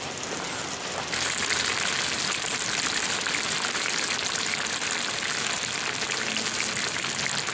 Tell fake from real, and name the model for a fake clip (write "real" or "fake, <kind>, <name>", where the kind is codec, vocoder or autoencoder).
real